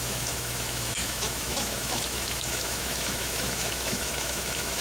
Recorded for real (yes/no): no